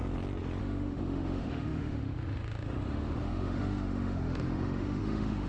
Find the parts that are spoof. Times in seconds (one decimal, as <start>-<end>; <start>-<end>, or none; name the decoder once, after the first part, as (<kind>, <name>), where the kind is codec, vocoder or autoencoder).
0.6-5.5 (autoencoder, DAC-VAE)